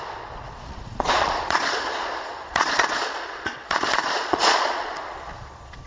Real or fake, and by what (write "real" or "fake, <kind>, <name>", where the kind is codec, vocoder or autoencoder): fake, vocoder, Vocos